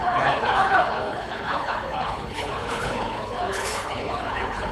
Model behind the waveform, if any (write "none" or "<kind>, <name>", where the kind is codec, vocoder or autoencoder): codec, HILCodec